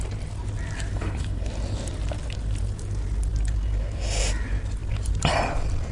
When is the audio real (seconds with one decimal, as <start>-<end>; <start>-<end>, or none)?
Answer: 0.0-0.9; 1.5-5.9